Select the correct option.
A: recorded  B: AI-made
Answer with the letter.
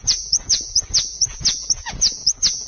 B